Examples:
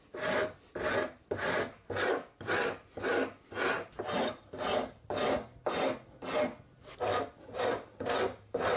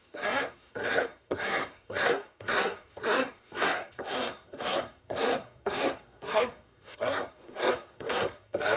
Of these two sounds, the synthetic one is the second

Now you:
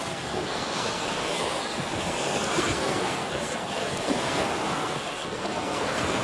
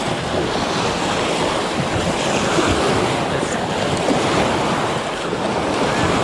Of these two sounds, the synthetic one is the first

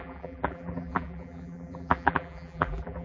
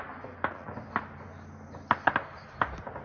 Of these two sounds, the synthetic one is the first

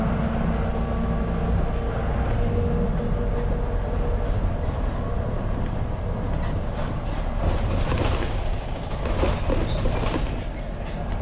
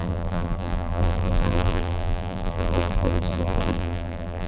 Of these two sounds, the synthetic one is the second